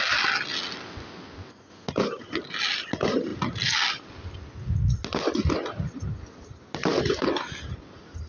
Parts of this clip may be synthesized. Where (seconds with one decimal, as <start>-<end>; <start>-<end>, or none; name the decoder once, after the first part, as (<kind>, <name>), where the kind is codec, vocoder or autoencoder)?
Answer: none